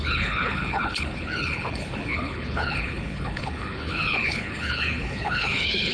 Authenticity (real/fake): fake